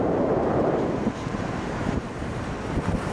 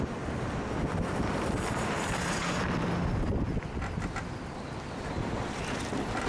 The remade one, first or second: first